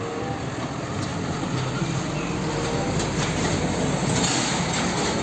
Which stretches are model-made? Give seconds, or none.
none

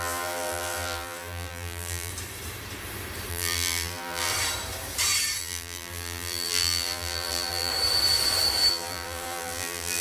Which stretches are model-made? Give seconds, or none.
0.0-2.1 (vocoder, BigVGAN v2); 3.3-4.3; 5.4-7.7; 8.7-10.0

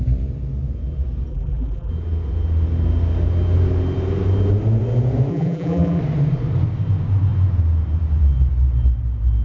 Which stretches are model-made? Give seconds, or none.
1.3-1.9 (vocoder, BigVGAN v2); 5.3-6.0

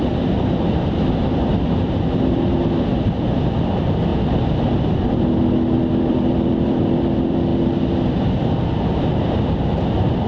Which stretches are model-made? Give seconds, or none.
0.0-4.1 (vocoder, BigVGAN v2); 5.9-7.5; 9.9-10.3

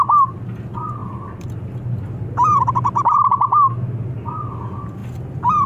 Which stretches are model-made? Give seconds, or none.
1.0-1.5 (vocoder, BigVGAN v2); 5.0-5.7

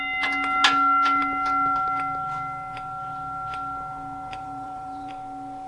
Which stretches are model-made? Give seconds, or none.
4.3-5.1 (vocoder, BigVGAN v2)

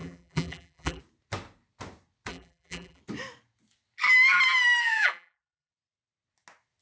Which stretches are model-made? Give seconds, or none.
0.0-1.0 (vocoder, BigVGAN v2); 2.3-3.0; 4.8-5.7

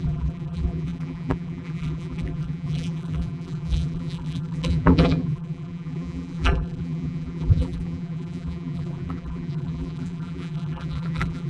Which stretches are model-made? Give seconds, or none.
0.0-11.5 (vocoder, BigVGAN v2)